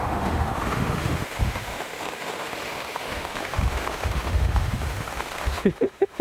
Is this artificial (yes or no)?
yes